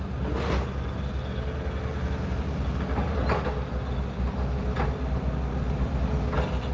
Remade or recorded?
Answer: recorded